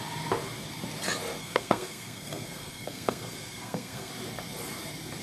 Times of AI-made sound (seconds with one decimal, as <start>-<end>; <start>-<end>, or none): 1.4-4.1